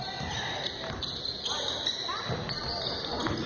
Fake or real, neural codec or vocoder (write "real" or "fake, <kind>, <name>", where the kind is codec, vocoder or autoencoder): real